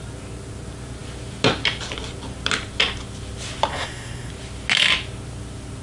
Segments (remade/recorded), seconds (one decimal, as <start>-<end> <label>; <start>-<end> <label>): 0.0-3.7 recorded; 3.7-4.3 remade; 4.3-5.8 recorded